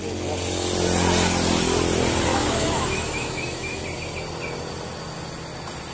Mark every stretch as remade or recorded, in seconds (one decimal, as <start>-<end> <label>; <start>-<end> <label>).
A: 0.0-2.3 recorded; 2.3-3.8 remade; 3.8-5.9 recorded